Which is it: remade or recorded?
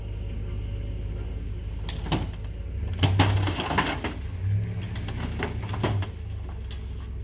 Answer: recorded